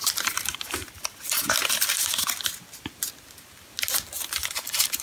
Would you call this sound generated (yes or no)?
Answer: no